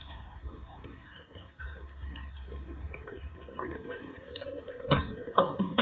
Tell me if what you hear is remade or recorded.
remade